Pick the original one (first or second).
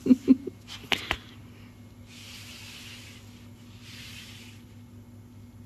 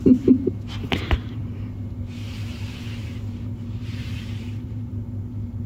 first